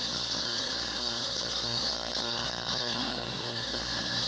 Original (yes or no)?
no